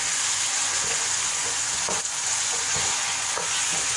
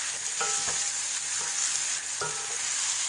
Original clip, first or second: second